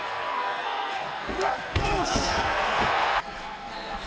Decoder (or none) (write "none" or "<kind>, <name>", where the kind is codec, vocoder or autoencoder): codec, SNAC